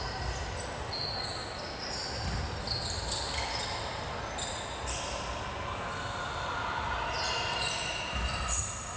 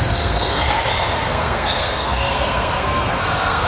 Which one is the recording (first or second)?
first